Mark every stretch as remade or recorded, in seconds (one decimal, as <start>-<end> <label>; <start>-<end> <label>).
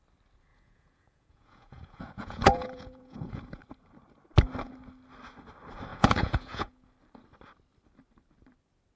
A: 0.0-0.5 recorded; 0.5-3.6 remade; 3.6-5.9 recorded; 5.9-6.9 remade; 6.9-9.0 recorded